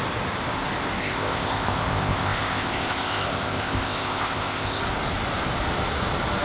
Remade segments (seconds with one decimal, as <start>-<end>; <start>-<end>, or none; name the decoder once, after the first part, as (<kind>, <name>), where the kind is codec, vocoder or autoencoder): 1.0-4.8 (codec, ZipCodec)